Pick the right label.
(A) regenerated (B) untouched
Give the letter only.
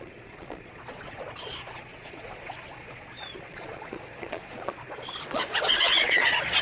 A